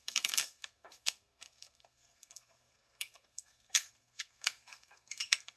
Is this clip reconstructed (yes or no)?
yes